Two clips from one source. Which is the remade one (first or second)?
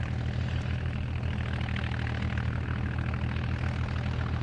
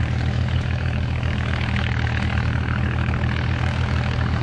second